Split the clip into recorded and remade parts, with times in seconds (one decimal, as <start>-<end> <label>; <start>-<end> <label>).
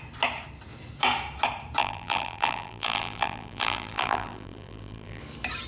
0.0-1.8 recorded; 1.8-5.2 remade; 5.2-5.7 recorded